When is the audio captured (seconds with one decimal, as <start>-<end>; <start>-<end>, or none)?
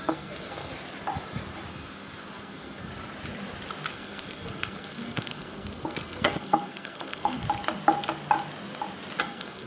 0.7-1.7; 2.9-3.9; 7.4-9.2